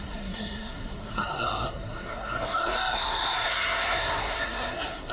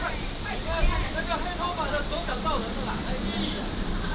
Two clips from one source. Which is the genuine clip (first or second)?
second